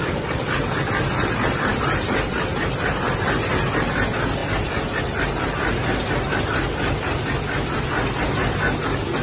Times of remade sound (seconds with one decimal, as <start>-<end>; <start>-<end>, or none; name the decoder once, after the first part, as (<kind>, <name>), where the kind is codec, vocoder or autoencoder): none